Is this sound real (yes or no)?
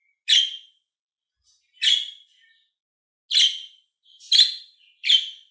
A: yes